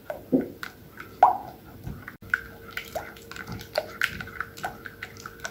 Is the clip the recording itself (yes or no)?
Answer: yes